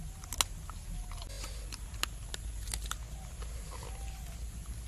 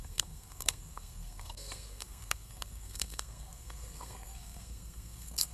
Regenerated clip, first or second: second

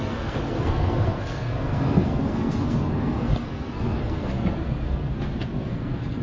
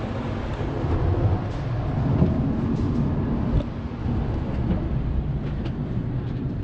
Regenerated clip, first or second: first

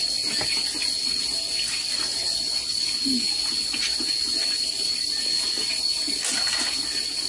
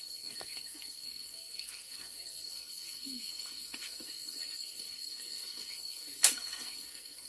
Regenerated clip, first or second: second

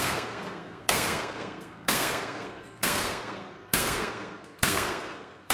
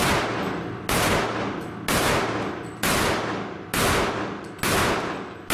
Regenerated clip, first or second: first